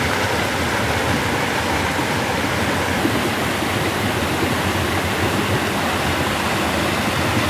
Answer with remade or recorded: recorded